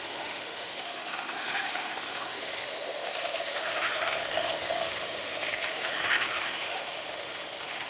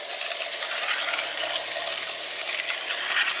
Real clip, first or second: second